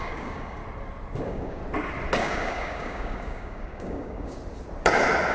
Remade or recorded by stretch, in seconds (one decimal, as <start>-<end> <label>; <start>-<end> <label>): 0.0-0.6 remade; 0.6-1.2 recorded; 1.2-1.6 remade; 1.6-2.2 recorded; 2.2-4.4 remade; 4.4-5.3 recorded